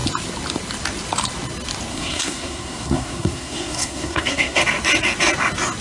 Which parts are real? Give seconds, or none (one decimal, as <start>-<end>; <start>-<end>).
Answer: 0.0-1.9; 4.6-5.8